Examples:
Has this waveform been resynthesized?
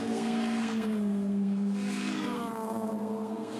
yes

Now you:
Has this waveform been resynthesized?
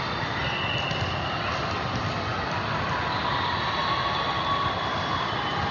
no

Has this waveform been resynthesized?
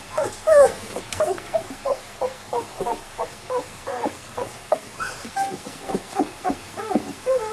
yes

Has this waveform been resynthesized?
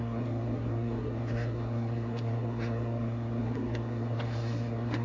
yes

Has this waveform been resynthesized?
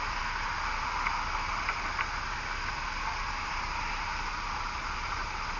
no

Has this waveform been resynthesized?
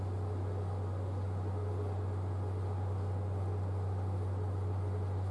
no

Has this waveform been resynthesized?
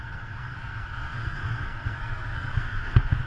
yes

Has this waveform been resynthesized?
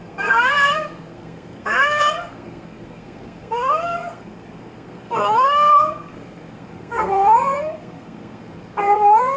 yes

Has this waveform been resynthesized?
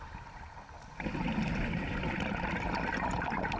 no